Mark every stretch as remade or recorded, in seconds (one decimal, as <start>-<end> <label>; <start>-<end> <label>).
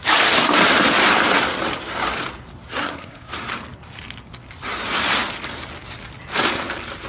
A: 0.0-2.8 recorded; 2.8-3.3 remade; 3.3-7.1 recorded